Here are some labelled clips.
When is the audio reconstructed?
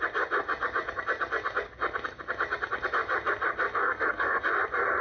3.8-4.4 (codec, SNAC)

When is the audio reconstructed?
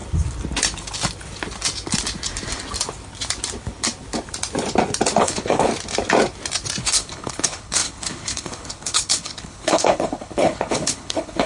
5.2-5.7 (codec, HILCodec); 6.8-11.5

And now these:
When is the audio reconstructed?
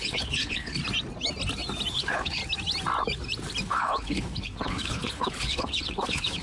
0.0-0.8 (codec, HILCodec); 1.9-2.4; 3.6-6.4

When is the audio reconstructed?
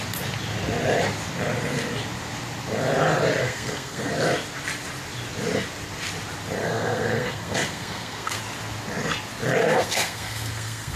3.4-4.1 (codec, SNAC); 6.6-8.4; 9.6-11.0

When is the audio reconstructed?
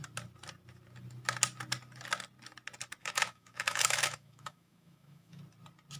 3.0-5.4 (autoencoder, DAC-VAE)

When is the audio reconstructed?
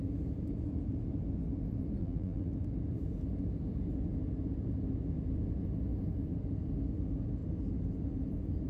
2.0-2.5 (vocoder, BigVGAN v2)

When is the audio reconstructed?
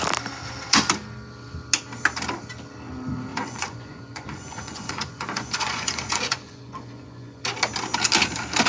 3.3-7.4 (vocoder, Vocos)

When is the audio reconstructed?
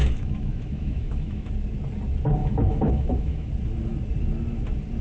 0.0-1.5 (autoencoder, DAC-VAE); 2.4-3.5